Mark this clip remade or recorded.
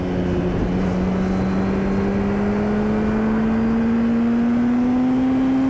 recorded